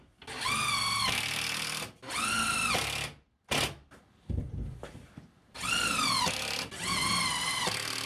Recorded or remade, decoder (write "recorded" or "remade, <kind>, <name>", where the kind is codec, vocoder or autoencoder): recorded